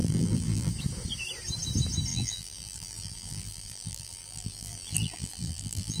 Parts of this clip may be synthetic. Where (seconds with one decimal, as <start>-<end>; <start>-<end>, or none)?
0.0-0.7; 2.1-6.0